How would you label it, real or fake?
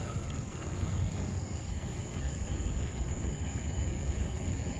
fake